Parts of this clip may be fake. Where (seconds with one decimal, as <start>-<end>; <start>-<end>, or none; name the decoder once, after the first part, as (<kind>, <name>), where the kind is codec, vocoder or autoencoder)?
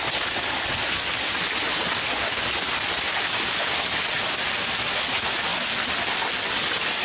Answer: none